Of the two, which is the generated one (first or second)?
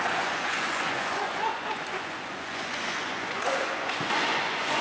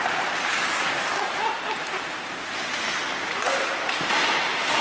first